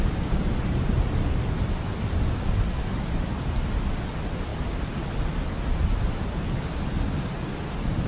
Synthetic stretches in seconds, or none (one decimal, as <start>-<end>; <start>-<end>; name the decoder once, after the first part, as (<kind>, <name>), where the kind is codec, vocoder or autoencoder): none